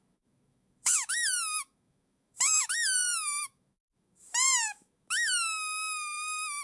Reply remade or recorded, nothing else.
remade